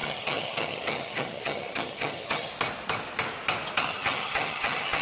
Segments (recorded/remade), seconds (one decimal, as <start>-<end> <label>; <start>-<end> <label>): 0.0-2.5 remade; 2.5-3.8 recorded; 3.8-5.0 remade